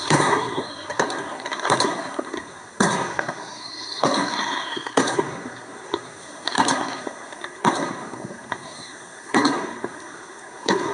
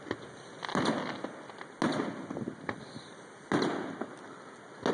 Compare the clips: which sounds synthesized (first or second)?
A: first